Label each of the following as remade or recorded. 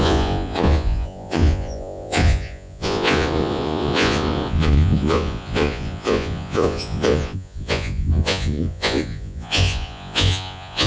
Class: remade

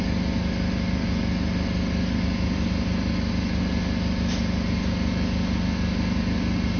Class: recorded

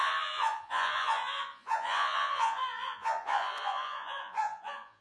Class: remade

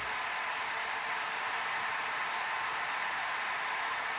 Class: recorded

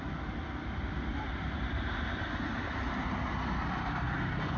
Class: recorded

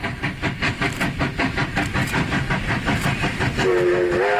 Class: recorded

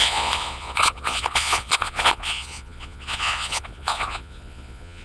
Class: remade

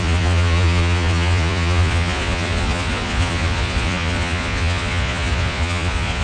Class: remade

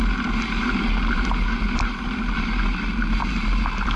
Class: recorded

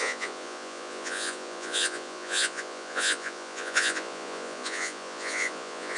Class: remade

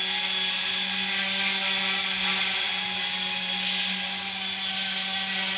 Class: recorded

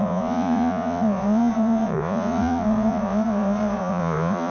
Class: remade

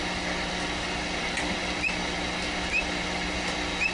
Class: recorded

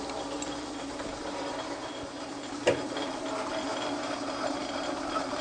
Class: recorded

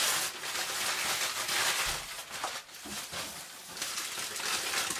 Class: recorded